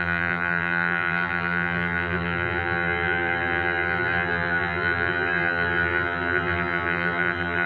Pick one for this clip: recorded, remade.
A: remade